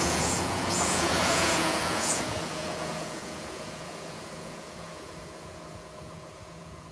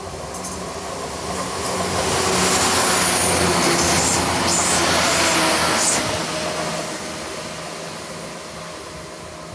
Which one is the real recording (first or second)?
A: second